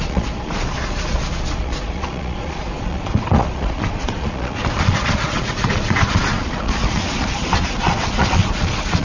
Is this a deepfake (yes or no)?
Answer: yes